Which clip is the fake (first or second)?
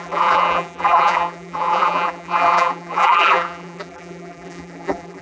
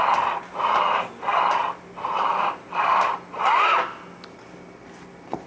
first